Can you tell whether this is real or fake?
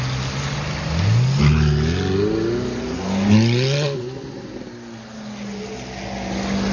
real